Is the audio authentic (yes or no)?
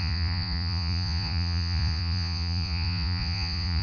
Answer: no